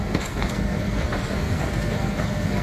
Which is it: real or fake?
fake